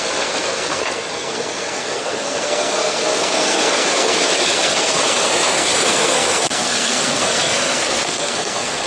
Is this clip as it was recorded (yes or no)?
no